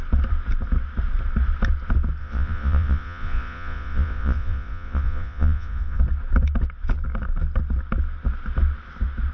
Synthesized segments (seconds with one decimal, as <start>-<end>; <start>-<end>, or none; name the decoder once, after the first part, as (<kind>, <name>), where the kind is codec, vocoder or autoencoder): 2.2-6.0 (vocoder, Vocos)